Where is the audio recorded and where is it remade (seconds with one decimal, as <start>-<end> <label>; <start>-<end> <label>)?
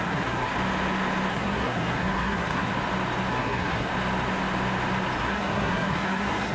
0.0-0.5 remade; 0.5-1.3 recorded; 1.3-2.7 remade; 2.7-3.3 recorded; 3.3-3.9 remade; 3.9-5.2 recorded; 5.2-6.5 remade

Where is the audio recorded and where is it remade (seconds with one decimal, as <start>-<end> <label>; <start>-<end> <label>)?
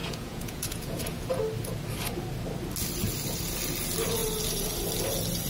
0.0-1.4 remade; 1.4-5.5 recorded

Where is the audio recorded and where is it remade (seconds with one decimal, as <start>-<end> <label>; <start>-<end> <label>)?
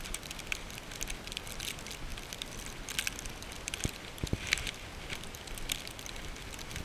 0.0-6.8 recorded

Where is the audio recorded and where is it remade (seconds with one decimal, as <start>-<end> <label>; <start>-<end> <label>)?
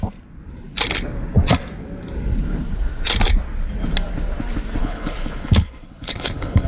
0.0-4.8 recorded; 4.8-6.7 remade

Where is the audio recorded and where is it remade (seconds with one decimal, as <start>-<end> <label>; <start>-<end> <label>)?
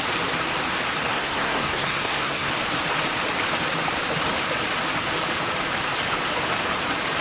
0.0-1.1 recorded; 1.1-2.5 remade; 2.5-7.2 recorded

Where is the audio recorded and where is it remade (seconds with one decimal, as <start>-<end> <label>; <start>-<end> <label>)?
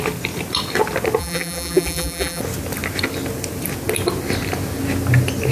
0.0-1.2 recorded; 1.2-2.4 remade; 2.4-5.5 recorded